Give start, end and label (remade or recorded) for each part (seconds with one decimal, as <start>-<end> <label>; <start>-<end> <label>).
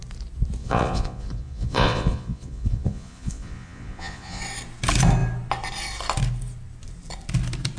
0.0-0.6 recorded; 0.6-4.4 remade; 4.4-7.8 recorded